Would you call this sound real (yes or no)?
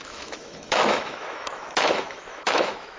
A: no